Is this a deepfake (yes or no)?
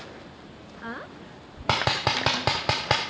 no